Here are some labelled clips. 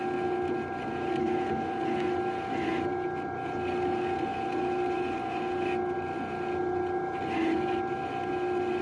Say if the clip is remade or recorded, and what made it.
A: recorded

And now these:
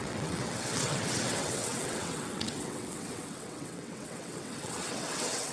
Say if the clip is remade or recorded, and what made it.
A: remade, vocoder, WaveNeXt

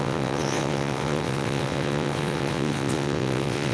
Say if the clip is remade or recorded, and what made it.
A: remade, vocoder, WaveNeXt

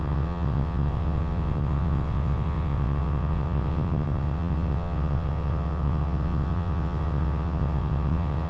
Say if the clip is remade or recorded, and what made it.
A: remade, vocoder, WaveNeXt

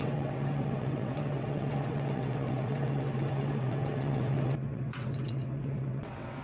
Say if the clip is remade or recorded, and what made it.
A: remade, vocoder, WaveNeXt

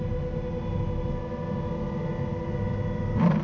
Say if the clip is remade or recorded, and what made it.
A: recorded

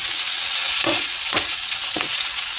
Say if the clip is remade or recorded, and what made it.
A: remade, vocoder, WaveNeXt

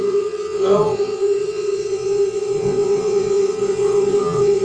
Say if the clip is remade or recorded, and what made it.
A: remade, vocoder, WaveNeXt